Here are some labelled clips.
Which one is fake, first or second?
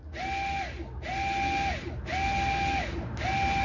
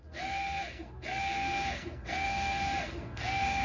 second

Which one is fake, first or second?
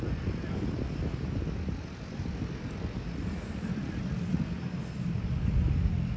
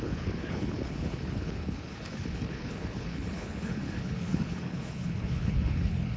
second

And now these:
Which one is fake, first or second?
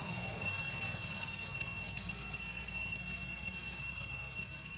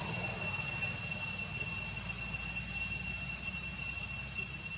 first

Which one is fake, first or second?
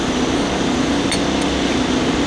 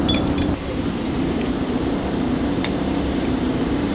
second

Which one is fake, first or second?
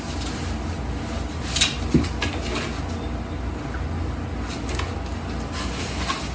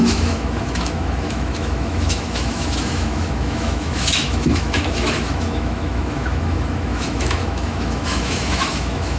second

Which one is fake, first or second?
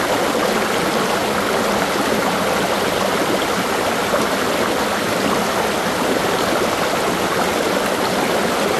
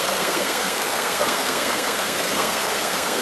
second